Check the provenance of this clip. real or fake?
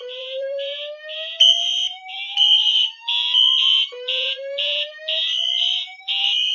fake